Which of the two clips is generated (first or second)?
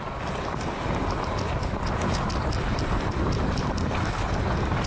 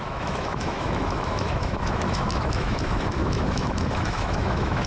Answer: second